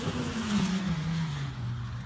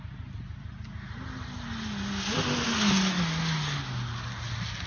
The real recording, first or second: second